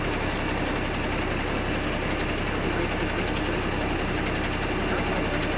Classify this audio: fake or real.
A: real